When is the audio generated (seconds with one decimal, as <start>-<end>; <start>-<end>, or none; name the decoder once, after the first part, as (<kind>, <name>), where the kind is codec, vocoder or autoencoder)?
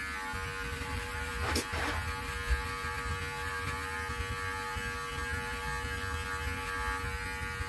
0.7-1.3 (vocoder, BigVGAN v2)